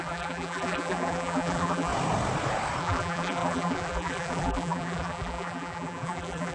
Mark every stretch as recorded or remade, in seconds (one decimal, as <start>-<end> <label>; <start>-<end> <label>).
0.0-1.9 remade; 1.9-2.8 recorded; 2.8-6.5 remade